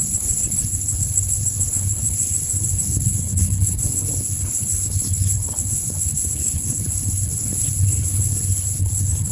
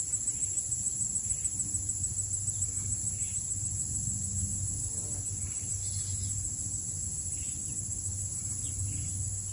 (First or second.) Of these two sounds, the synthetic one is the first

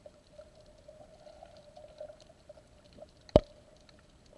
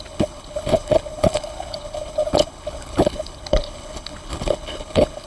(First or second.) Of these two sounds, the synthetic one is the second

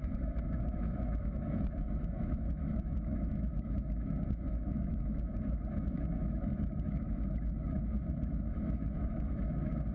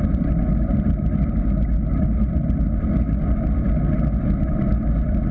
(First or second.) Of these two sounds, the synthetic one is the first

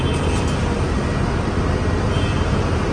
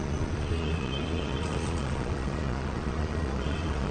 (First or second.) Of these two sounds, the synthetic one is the second